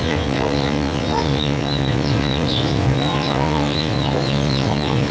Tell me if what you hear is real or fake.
fake